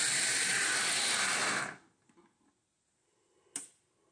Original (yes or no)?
yes